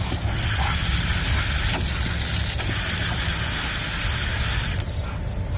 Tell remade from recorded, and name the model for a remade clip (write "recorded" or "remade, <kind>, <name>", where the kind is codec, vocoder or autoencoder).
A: recorded